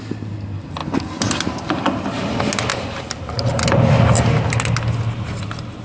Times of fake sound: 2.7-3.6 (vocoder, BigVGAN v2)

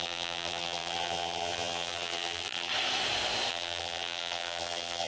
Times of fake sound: 0.0-2.7 (vocoder, BigVGAN v2); 3.5-5.1

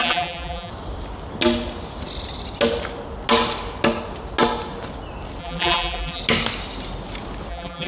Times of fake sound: 0.0-0.7 (vocoder, BigVGAN v2); 5.4-6.2; 7.5-7.9

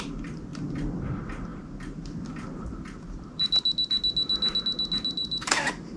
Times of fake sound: 5.2-6.0 (vocoder, BigVGAN v2)

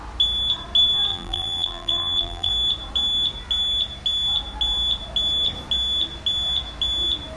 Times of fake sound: 1.1-2.5 (vocoder, BigVGAN v2)

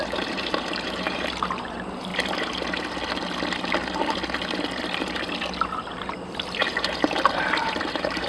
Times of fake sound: 0.0-2.1 (vocoder, BigVGAN v2); 5.8-8.3

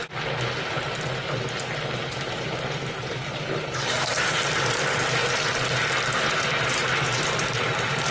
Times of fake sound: 2.1-5.2 (vocoder, BigVGAN v2); 6.3-8.1

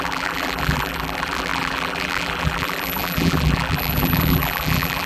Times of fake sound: 0.0-5.1 (vocoder, BigVGAN v2)